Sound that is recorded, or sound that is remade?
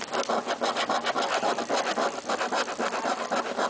recorded